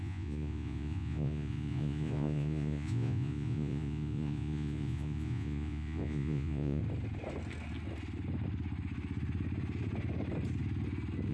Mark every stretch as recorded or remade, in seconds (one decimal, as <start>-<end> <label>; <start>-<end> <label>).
0.0-6.8 remade; 6.8-11.3 recorded